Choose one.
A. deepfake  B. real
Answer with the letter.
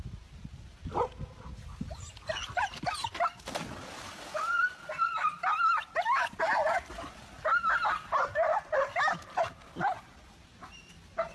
B